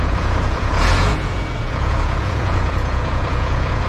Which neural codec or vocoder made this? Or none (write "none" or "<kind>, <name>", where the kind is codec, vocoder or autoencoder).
vocoder, Vocos